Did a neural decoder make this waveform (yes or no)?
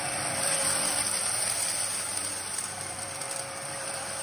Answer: yes